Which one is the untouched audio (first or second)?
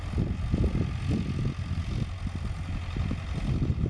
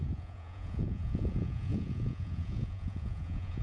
first